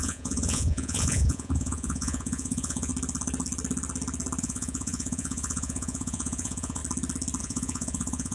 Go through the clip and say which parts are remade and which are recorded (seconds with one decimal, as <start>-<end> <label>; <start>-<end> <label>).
0.0-2.9 remade; 2.9-4.4 recorded; 4.4-6.8 remade; 6.8-7.4 recorded; 7.4-8.3 remade